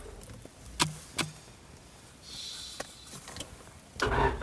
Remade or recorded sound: recorded